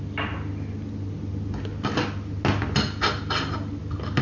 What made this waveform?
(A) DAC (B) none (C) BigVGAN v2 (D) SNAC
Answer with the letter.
B